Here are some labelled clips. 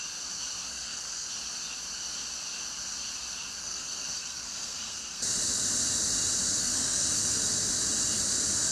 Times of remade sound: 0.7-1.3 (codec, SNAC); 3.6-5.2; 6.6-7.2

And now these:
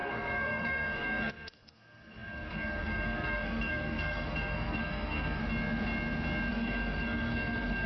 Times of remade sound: 0.0-5.4 (codec, SNAC); 6.5-7.9

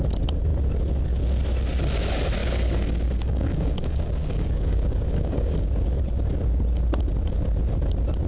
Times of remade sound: 2.4-5.7 (codec, DAC)